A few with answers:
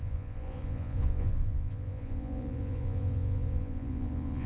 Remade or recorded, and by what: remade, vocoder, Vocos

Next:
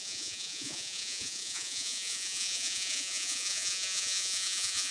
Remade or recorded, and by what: remade, vocoder, Vocos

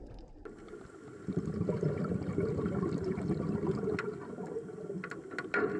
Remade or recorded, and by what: recorded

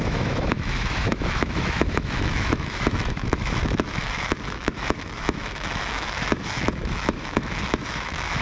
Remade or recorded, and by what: remade, autoencoder, DAC-VAE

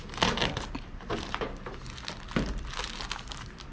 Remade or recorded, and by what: recorded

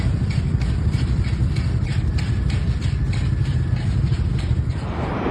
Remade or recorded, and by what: recorded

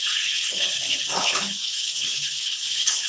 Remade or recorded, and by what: remade, codec, HILCodec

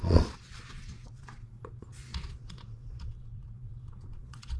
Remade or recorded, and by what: remade, vocoder, Vocos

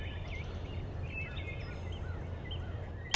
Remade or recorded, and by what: recorded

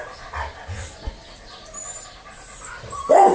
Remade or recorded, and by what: recorded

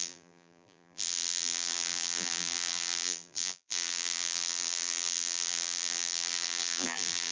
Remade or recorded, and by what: remade, vocoder, BigVGAN v2